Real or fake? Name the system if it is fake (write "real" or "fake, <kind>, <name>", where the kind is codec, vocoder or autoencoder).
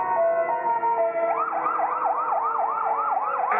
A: real